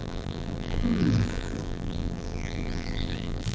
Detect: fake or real fake